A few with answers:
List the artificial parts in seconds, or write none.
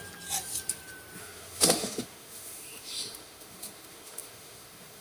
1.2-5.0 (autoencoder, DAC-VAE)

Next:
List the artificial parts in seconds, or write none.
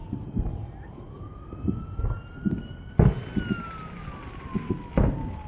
none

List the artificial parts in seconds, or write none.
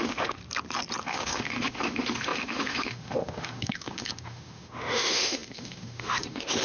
0.0-0.4 (autoencoder, DAC-VAE); 1.0-6.6